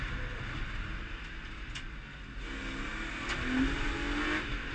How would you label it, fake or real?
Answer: real